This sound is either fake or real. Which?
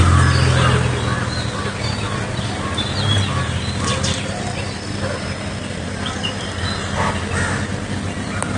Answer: real